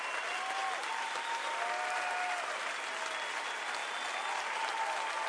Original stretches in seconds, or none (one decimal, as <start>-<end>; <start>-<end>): 0.0-5.3